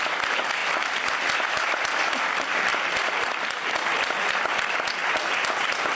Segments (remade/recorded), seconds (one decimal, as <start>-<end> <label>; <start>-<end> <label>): 0.0-0.6 recorded; 0.6-1.1 remade; 1.1-2.7 recorded; 2.7-3.7 remade; 3.7-5.9 recorded